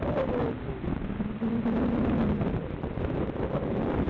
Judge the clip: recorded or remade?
recorded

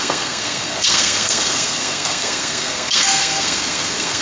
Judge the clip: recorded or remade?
remade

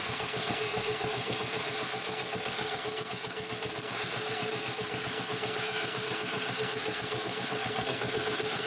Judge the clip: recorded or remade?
remade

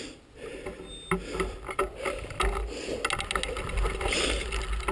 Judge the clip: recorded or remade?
recorded